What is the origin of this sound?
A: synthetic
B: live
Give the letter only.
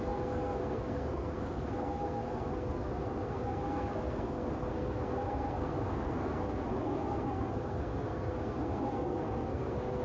A